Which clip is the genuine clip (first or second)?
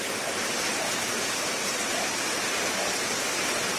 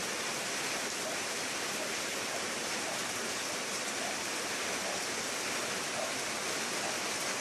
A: first